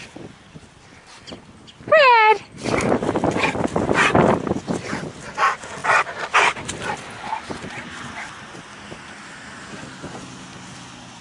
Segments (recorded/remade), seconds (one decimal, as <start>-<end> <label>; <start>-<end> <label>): 0.0-11.2 recorded